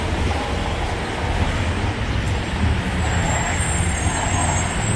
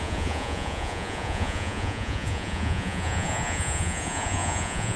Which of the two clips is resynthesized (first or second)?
second